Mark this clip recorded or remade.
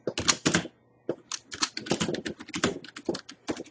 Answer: recorded